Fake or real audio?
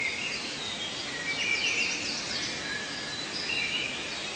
real